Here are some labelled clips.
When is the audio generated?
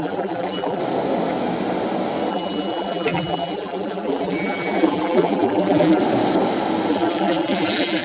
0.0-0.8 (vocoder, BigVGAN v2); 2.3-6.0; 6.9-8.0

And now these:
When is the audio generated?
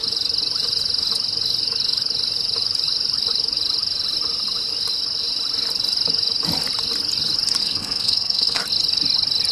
7.6-8.6 (codec, SNAC)